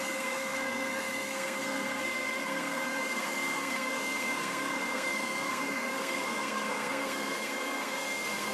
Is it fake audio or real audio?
fake